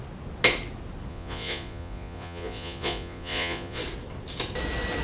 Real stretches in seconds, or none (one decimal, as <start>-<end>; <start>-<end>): 0.0-1.1; 3.8-5.0